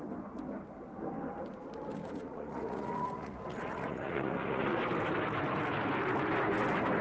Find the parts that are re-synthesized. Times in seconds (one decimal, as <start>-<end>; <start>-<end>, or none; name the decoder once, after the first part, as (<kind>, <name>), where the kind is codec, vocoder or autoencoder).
2.0-4.8 (vocoder, Vocos)

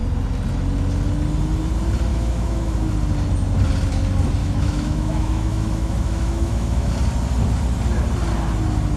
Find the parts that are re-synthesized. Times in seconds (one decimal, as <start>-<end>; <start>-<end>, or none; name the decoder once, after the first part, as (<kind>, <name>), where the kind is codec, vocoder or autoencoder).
2.1-2.9 (autoencoder, DAC-VAE); 4.4-6.9

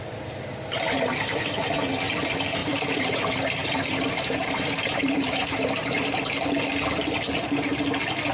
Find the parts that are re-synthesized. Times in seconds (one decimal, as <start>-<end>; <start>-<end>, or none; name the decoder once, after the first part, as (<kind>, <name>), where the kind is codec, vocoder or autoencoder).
2.6-6.6 (vocoder, BigVGAN v2)

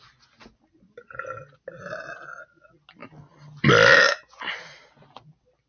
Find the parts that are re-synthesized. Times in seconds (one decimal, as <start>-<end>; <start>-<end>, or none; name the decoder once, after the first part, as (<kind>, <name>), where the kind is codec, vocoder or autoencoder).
none

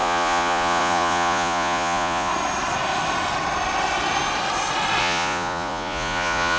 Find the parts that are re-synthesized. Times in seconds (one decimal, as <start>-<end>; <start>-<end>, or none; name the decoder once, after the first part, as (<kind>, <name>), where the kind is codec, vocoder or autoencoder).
0.0-2.3 (vocoder, Vocos); 5.0-6.6

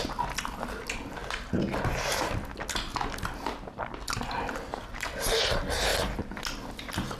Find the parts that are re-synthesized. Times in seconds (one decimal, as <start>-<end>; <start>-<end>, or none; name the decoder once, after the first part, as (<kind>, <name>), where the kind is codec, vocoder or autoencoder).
none